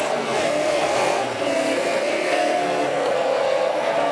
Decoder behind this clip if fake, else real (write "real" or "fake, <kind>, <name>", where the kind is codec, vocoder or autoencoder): fake, codec, SNAC